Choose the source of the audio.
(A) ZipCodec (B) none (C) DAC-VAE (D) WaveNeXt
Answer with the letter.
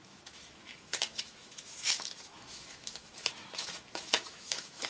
C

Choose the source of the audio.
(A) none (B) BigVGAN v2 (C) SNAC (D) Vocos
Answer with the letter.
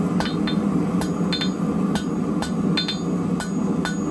A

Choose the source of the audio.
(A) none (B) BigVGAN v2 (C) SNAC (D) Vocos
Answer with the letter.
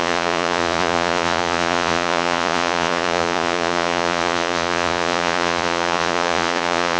D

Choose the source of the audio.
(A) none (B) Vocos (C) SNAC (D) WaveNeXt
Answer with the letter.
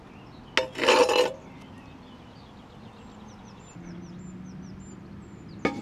A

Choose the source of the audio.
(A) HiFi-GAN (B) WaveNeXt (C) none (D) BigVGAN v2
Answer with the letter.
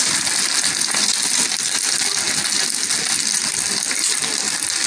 C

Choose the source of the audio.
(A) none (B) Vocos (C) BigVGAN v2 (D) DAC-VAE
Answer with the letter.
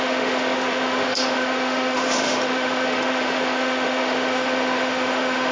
D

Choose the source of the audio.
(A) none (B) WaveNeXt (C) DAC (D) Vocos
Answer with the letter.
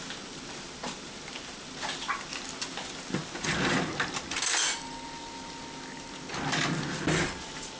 A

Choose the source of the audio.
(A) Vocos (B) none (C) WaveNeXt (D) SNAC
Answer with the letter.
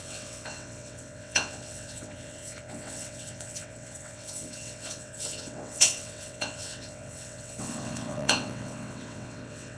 C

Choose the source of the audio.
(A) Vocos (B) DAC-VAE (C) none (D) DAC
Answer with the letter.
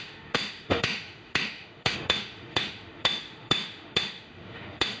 B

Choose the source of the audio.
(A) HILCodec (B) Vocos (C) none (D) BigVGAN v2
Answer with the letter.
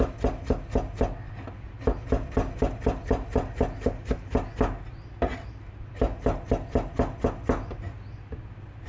C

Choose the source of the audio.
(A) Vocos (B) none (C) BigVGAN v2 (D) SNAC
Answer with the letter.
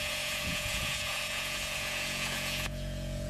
A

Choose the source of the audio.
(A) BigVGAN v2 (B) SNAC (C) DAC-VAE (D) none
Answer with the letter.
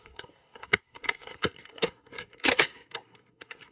B